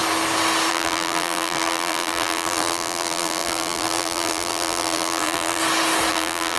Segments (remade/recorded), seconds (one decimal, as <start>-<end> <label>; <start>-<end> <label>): 0.0-0.7 recorded; 0.7-5.6 remade; 5.6-6.1 recorded; 6.1-6.6 remade